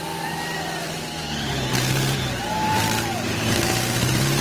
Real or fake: fake